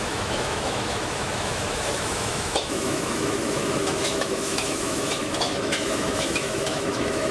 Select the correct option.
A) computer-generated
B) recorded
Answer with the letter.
A